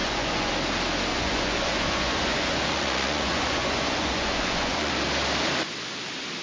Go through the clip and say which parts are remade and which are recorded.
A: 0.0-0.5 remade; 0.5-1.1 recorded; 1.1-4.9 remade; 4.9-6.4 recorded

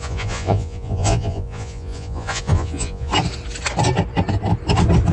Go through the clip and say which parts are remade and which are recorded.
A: 0.0-3.1 remade; 3.1-5.1 recorded

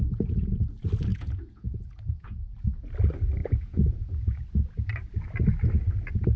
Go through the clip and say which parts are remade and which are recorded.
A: 0.0-0.6 remade; 0.6-1.1 recorded; 1.1-2.9 remade; 2.9-3.4 recorded; 3.4-4.4 remade; 4.4-6.4 recorded